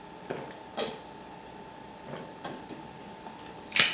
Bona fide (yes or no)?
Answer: yes